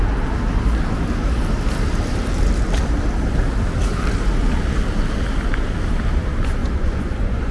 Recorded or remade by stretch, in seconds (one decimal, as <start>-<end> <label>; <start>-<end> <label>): 0.0-6.6 recorded; 6.6-7.5 remade